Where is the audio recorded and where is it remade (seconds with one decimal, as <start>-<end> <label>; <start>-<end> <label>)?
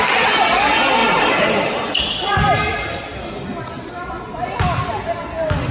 0.0-1.0 recorded; 1.0-1.9 remade; 1.9-5.7 recorded